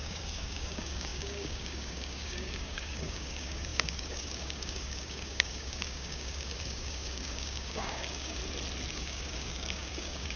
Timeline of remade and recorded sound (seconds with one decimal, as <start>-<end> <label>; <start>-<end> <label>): 0.0-8.4 remade; 8.4-8.9 recorded; 8.9-10.4 remade